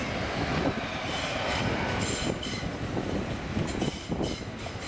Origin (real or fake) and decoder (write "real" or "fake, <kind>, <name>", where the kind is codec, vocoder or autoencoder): real